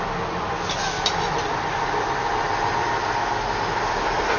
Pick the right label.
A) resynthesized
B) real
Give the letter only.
B